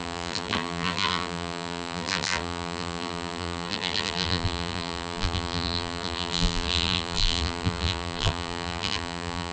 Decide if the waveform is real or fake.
fake